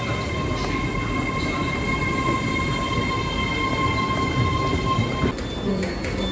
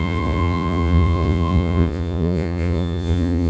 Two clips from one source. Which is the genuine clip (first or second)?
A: first